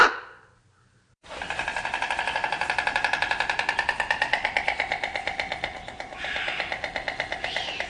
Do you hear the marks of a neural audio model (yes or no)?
no